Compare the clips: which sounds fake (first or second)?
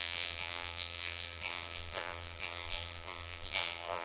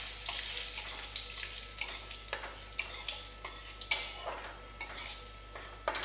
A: first